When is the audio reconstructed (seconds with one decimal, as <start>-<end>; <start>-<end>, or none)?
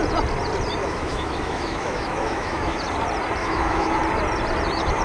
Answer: 0.8-2.8; 3.4-4.0